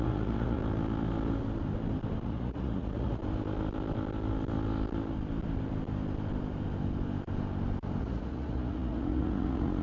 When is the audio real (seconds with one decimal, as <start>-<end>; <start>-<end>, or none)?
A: 0.6-2.2; 3.2-8.0